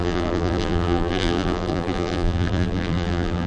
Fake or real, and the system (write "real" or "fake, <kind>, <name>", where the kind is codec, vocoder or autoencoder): fake, vocoder, BigVGAN v2